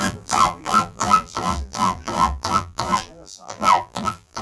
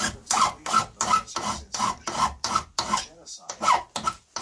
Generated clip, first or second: first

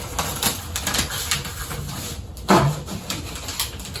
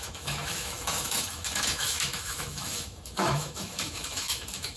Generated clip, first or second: second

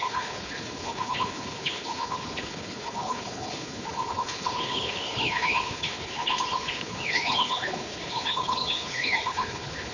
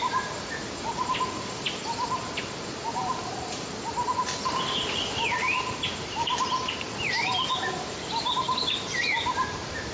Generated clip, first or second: first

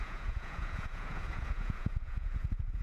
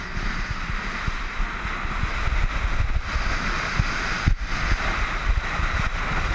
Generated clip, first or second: first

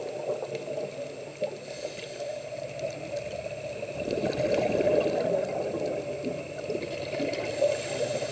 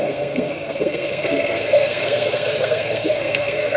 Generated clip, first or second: second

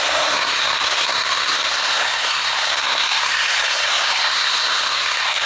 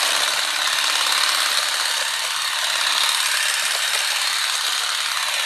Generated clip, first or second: first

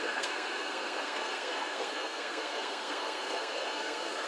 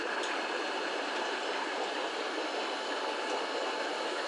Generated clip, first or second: first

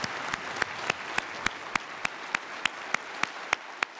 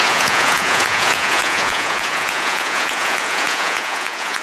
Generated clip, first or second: second